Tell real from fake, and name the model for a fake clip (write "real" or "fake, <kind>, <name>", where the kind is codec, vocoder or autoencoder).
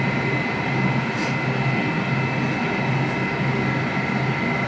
real